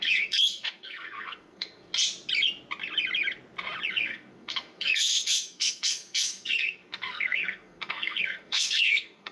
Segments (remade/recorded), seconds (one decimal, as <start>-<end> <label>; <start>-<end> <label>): 0.0-1.9 remade; 1.9-3.9 recorded; 3.9-9.3 remade